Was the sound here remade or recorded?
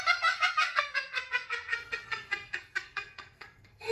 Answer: remade